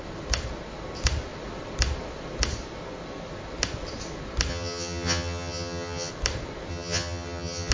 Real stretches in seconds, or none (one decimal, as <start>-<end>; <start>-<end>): 0.0-4.5; 6.1-6.7